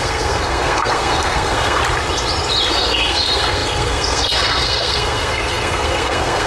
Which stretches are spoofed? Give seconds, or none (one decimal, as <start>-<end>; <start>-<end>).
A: 0.0-1.8; 2.7-6.5